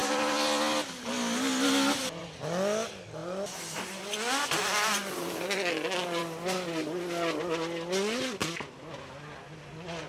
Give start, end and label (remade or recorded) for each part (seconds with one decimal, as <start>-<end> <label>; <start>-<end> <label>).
0.0-10.1 recorded